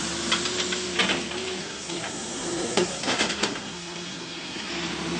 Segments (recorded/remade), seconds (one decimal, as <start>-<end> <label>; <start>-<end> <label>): 0.0-1.6 recorded; 1.6-4.7 remade; 4.7-5.2 recorded